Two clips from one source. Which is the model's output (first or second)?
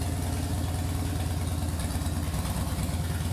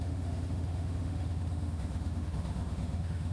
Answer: second